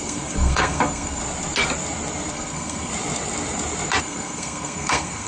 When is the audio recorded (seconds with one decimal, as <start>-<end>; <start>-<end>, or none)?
1.2-2.3; 2.9-4.0